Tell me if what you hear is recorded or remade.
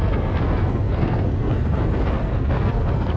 remade